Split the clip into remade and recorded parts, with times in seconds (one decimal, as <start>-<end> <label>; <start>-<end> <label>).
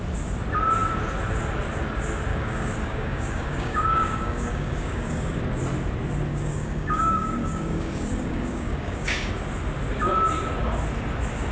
0.0-2.3 recorded; 2.3-5.4 remade; 5.4-6.3 recorded; 6.3-9.3 remade; 9.3-11.5 recorded